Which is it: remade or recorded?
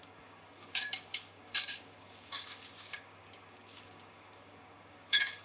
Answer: remade